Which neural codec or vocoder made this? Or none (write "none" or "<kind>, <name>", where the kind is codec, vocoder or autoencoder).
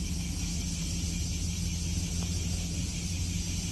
none